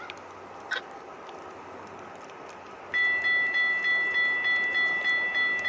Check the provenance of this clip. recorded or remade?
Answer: recorded